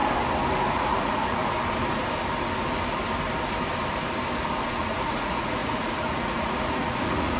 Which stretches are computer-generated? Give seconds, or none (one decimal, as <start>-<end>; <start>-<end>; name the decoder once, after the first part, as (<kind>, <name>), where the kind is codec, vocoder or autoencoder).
0.7-1.4 (vocoder, Vocos); 4.6-7.4